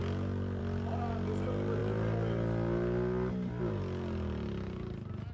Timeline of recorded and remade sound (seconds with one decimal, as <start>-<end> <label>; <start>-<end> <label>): 0.0-5.3 recorded